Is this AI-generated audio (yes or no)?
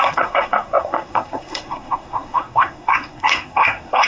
yes